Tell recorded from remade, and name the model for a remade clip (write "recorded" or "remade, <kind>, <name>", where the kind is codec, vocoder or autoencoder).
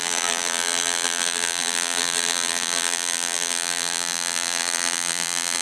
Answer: remade, vocoder, BigVGAN v2